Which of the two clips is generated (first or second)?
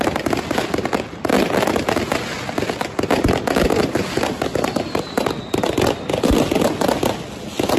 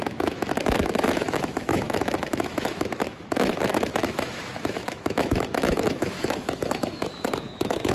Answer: second